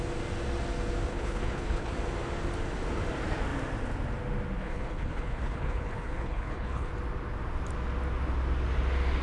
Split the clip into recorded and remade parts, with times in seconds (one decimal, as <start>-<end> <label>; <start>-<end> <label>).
0.0-1.1 recorded; 1.1-1.9 remade; 1.9-4.6 recorded; 4.6-6.9 remade; 6.9-9.2 recorded